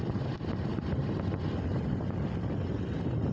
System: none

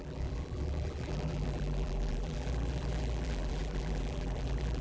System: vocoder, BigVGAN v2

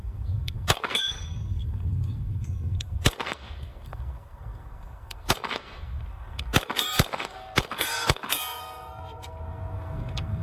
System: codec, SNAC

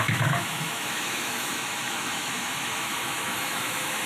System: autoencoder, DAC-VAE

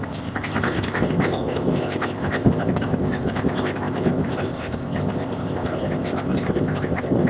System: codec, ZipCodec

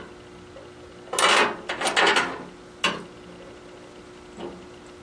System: none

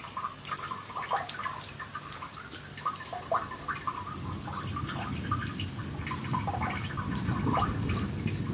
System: none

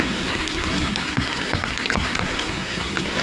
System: codec, SNAC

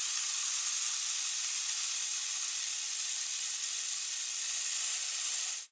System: none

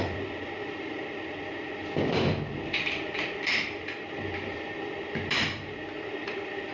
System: vocoder, BigVGAN v2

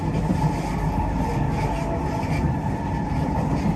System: none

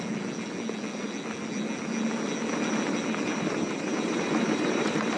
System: none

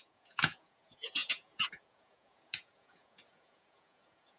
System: vocoder, Vocos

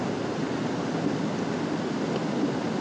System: none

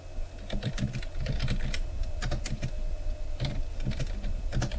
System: none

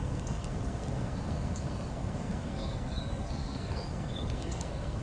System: codec, SNAC